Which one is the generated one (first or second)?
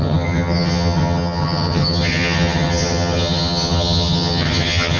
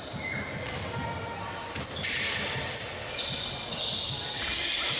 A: first